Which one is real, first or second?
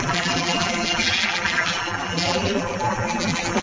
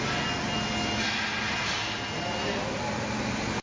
second